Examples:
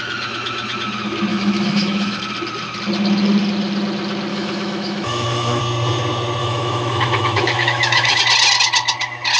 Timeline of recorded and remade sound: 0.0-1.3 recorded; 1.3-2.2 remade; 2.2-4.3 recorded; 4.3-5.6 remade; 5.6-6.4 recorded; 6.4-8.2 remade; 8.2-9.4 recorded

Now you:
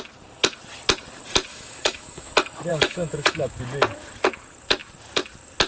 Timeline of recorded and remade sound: 0.0-1.5 recorded; 1.5-2.3 remade; 2.3-2.7 recorded; 2.7-3.6 remade; 3.6-5.7 recorded

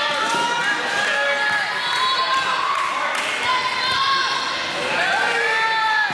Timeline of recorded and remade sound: 0.0-6.1 recorded

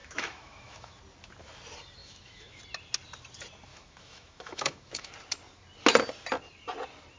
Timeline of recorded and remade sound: 0.0-1.0 remade; 1.0-2.0 recorded; 2.0-2.6 remade; 2.6-3.7 recorded; 3.7-5.1 remade; 5.1-7.2 recorded

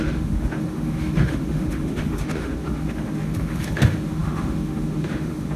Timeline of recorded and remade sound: 0.0-5.6 remade